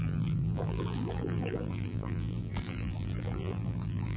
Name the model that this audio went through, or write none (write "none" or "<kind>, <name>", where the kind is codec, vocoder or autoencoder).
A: vocoder, BigVGAN v2